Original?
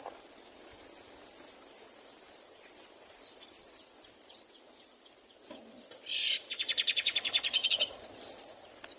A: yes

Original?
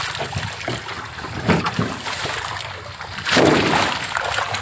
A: yes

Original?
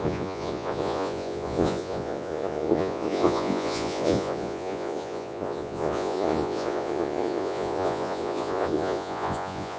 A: no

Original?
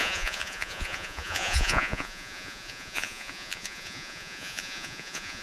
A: no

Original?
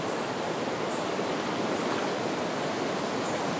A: yes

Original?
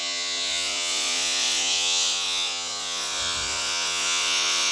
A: no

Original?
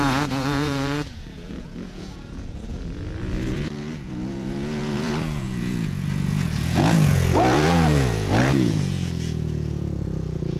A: no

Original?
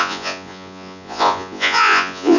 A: no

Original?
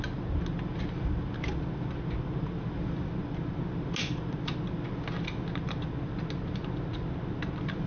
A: yes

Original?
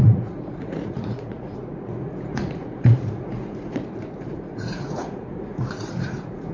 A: no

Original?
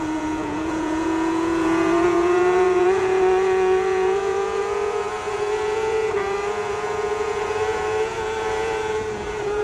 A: no